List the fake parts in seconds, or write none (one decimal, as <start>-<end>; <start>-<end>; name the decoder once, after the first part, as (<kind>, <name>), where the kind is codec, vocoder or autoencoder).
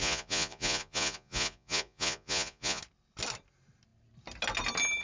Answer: 0.0-2.8 (vocoder, Vocos)